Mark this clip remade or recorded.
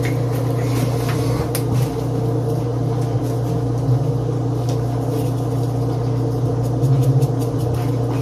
recorded